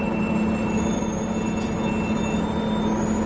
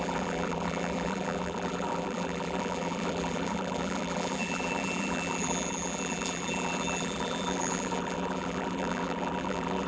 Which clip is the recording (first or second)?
first